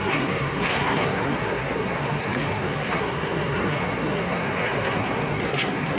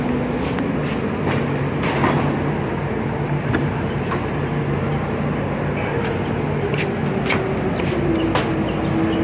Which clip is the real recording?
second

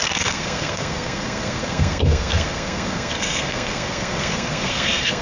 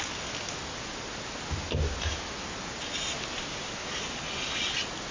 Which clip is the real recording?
second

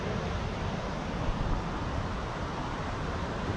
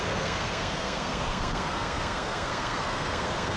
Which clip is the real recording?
first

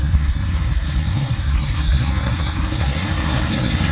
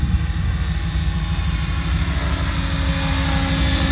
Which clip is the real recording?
second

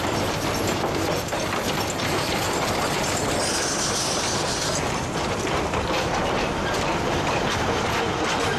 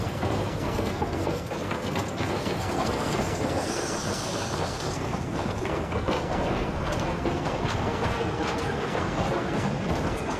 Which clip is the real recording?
first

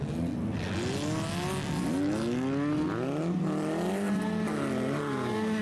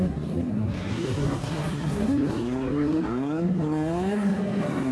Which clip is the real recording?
first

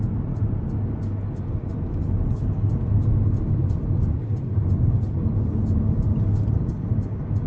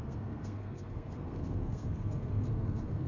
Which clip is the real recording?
first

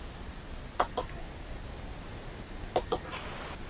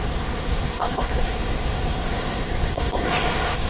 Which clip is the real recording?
first